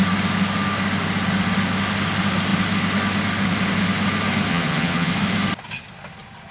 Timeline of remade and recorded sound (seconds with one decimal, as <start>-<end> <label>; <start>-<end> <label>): 0.0-4.5 recorded; 4.5-5.1 remade; 5.1-6.5 recorded